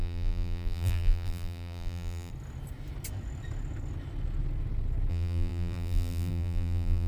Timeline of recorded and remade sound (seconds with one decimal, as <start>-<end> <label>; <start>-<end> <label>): 0.0-2.3 remade; 2.3-5.1 recorded; 5.1-7.1 remade